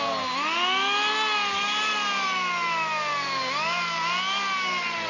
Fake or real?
real